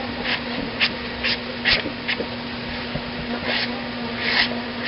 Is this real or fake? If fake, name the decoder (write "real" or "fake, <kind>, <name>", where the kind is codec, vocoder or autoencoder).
real